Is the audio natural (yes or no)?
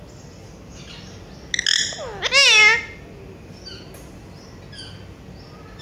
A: yes